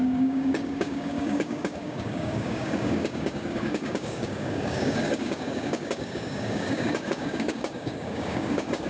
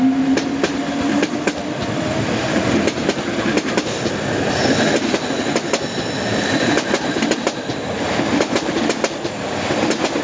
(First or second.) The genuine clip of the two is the second